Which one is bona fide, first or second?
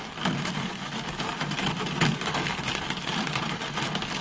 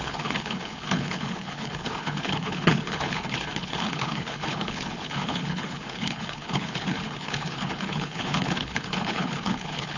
first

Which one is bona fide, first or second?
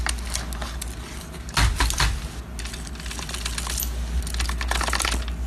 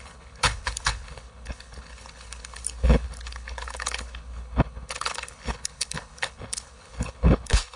first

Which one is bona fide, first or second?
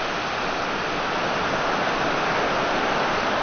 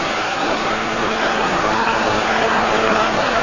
first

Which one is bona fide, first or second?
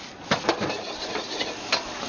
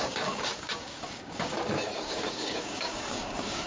first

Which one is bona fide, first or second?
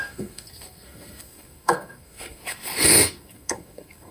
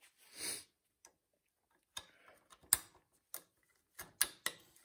second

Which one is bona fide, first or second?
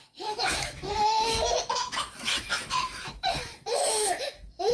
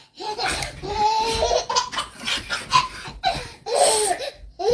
second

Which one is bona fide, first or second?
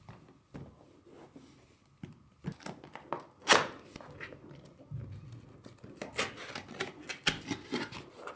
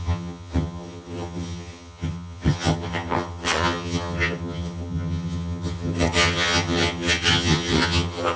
first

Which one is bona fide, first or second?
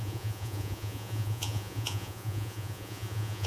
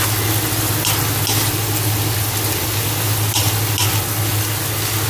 second